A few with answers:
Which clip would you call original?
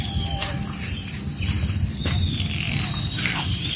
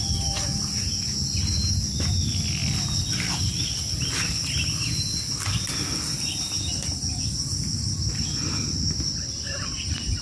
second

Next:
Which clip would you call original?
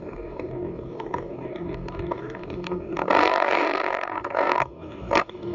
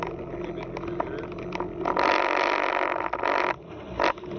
second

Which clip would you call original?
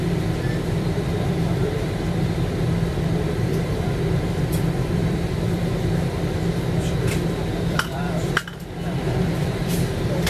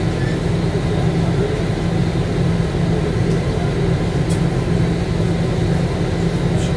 second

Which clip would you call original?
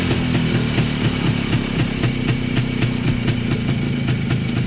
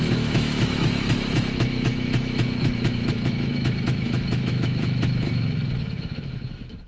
first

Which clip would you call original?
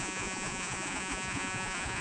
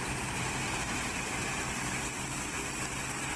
second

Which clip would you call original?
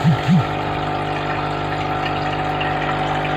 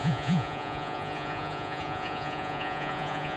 first